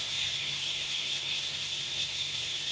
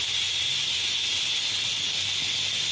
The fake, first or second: first